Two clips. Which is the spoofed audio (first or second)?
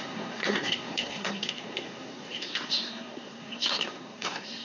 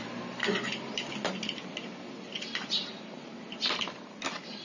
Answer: first